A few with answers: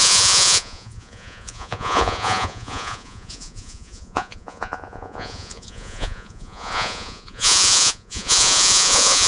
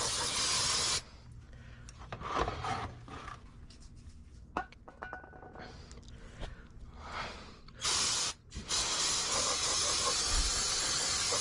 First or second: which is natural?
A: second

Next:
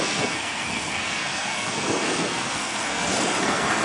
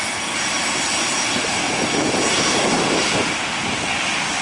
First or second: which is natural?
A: second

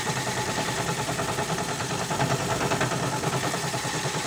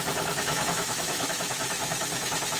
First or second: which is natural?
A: first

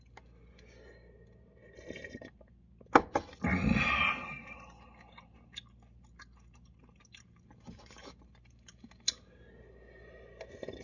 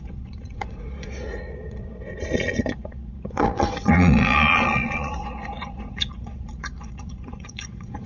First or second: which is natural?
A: first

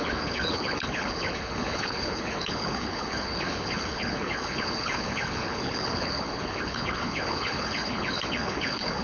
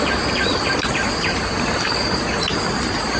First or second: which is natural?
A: second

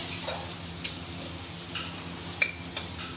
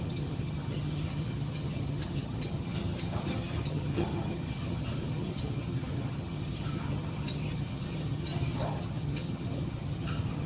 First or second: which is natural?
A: first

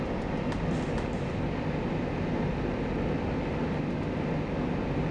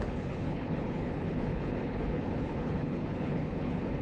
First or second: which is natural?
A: first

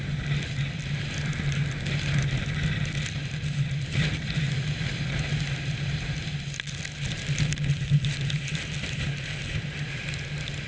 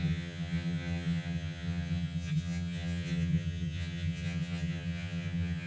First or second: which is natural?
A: first